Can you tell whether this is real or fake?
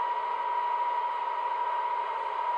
real